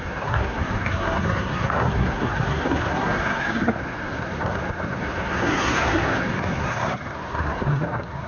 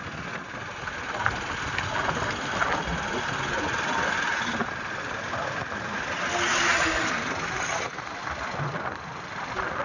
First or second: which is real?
second